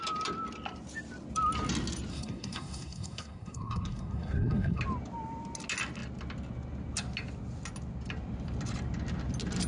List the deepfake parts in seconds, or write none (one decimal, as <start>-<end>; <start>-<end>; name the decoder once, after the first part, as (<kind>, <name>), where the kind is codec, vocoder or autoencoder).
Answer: 2.1-4.8 (codec, SNAC)